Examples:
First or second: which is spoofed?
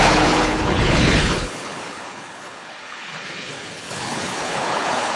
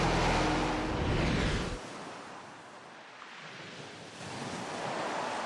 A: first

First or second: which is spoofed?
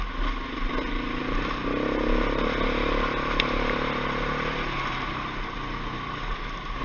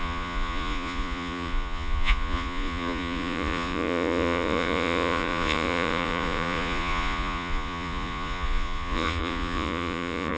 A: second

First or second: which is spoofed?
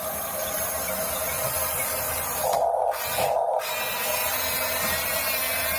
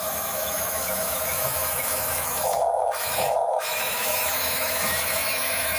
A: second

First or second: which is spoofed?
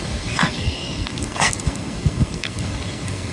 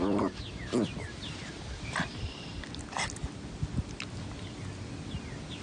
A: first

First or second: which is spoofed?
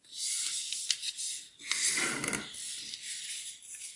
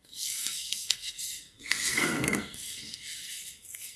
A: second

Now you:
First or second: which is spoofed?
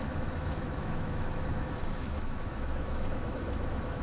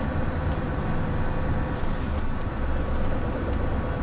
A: first